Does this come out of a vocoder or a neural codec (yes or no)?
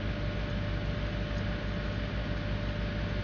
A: no